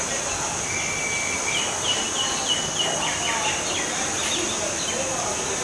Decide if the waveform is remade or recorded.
recorded